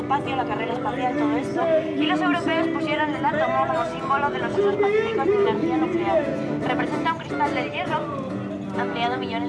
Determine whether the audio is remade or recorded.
recorded